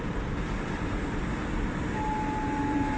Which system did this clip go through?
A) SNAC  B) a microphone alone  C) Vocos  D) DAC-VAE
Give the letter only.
B